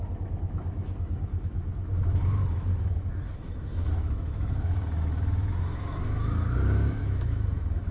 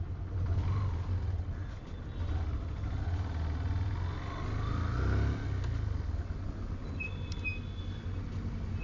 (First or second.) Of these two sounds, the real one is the second